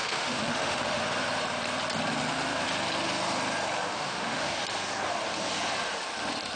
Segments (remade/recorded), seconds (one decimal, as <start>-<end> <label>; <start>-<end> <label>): 0.0-1.0 remade; 1.0-3.9 recorded; 3.9-4.6 remade; 4.6-6.6 recorded